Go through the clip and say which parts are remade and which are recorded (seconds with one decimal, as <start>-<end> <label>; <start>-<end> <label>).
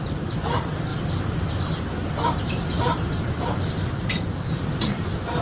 0.0-0.9 recorded; 0.9-4.1 remade; 4.1-5.4 recorded